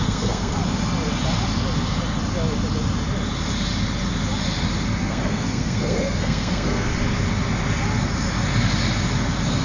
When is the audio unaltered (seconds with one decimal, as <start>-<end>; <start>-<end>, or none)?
0.6-5.1; 6.9-9.6